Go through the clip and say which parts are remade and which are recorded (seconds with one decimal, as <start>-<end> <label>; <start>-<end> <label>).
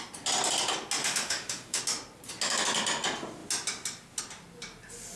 0.0-1.0 recorded; 1.0-1.8 remade; 1.8-5.2 recorded